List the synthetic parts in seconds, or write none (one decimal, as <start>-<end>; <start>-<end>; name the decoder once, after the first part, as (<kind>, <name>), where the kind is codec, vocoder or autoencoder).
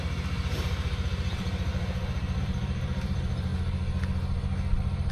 0.0-1.7 (vocoder, BigVGAN v2); 2.4-3.5